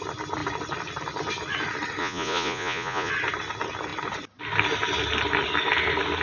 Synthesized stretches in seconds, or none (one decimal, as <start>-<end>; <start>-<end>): 2.0-3.1